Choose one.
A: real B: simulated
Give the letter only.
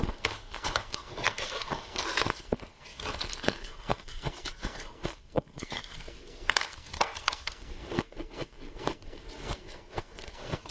B